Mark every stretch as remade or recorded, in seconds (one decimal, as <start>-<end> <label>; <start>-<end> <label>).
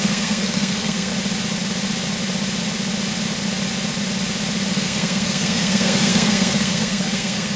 0.0-1.1 remade; 1.1-4.7 recorded; 4.7-7.6 remade